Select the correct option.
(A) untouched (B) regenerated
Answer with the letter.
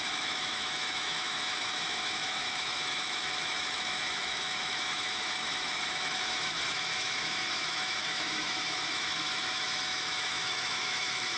B